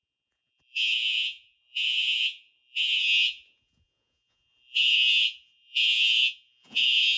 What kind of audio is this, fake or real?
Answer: fake